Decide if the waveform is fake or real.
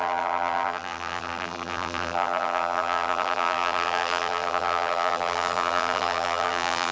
fake